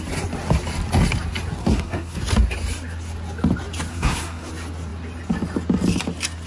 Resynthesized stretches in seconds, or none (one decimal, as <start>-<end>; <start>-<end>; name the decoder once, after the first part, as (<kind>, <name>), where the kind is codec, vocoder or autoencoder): 1.6-2.2 (codec, SNAC); 3.9-4.5